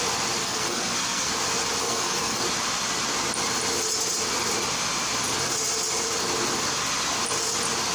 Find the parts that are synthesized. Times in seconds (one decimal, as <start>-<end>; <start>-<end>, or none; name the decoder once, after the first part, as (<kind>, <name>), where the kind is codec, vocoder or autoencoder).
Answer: 0.4-1.3 (codec, SNAC); 1.8-2.4